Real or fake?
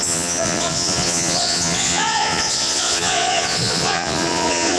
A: fake